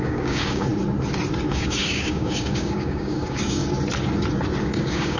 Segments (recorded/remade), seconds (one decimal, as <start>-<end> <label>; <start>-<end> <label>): 0.0-0.7 remade; 0.7-1.5 recorded; 1.5-3.6 remade; 3.6-4.6 recorded; 4.6-5.2 remade